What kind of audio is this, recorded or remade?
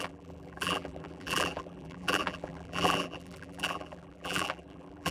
remade